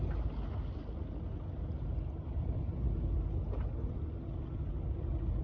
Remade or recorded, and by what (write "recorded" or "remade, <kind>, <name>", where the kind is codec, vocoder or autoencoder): recorded